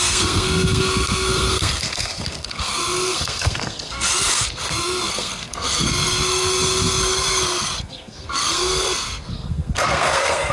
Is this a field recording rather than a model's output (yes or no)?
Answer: no